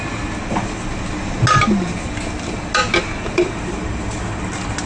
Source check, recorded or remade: recorded